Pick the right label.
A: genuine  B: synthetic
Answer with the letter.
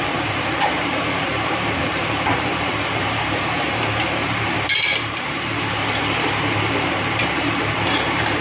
B